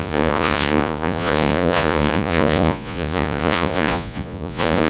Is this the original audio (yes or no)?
no